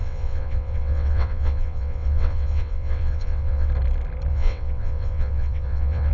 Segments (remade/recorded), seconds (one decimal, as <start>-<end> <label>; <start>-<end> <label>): 0.0-3.7 remade; 3.7-4.3 recorded; 4.3-6.1 remade